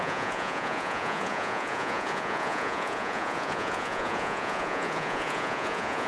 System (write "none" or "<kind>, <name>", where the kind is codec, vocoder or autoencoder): vocoder, Vocos